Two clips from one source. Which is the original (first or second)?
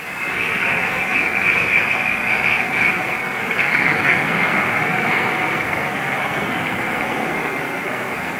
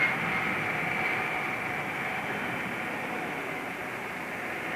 second